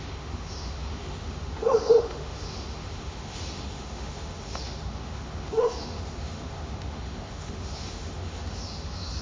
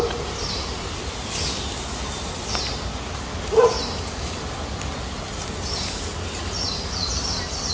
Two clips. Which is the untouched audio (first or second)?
second